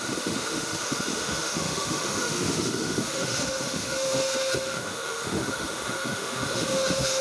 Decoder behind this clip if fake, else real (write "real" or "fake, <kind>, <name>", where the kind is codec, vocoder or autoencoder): fake, autoencoder, DAC-VAE